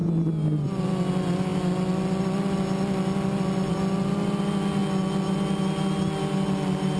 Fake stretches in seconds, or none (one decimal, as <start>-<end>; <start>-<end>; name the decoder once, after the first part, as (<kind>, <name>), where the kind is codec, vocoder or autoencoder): none